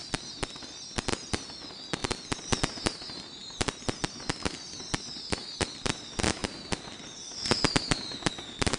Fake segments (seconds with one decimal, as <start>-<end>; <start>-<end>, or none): none